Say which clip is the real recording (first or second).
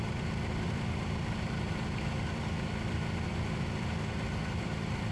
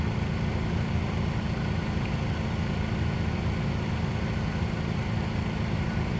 second